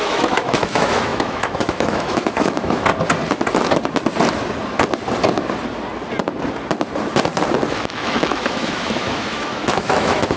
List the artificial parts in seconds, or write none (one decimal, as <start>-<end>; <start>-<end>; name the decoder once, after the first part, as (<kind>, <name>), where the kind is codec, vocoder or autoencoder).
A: 0.0-2.9 (autoencoder, DAC-VAE); 7.7-10.4

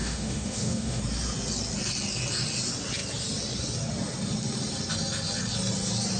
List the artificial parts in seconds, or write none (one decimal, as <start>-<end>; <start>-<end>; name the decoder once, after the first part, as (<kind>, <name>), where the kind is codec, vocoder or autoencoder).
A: 0.0-1.0 (autoencoder, DAC-VAE)